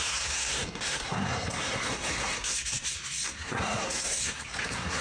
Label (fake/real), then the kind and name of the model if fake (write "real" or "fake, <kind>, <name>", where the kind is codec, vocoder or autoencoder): fake, codec, SNAC